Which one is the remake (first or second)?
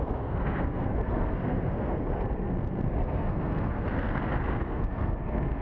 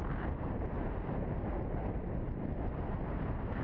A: first